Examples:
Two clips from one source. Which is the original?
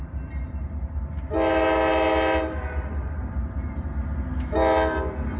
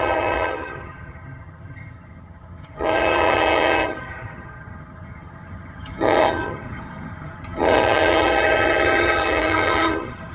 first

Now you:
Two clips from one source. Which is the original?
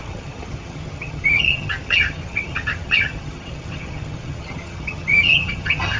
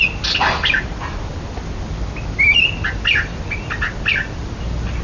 second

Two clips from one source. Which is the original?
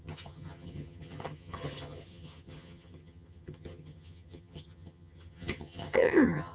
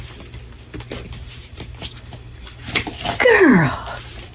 second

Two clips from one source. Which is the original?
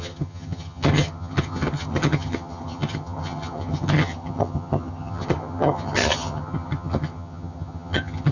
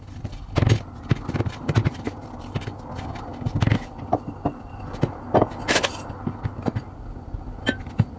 second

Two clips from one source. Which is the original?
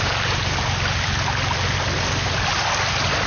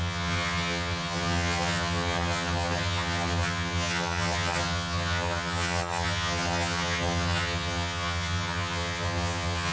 first